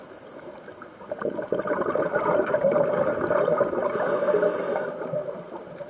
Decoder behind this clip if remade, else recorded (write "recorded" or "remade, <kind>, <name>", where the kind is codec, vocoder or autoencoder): recorded